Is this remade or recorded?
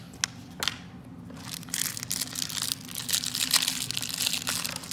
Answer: recorded